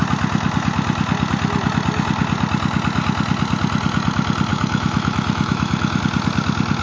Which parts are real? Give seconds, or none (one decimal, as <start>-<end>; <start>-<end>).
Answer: 0.0-4.5; 6.0-6.8